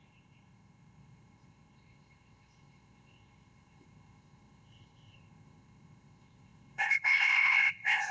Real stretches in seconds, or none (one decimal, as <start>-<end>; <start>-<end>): none